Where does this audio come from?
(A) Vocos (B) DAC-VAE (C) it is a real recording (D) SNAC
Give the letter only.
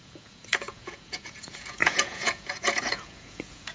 A